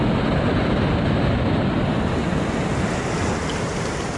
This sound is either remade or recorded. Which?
recorded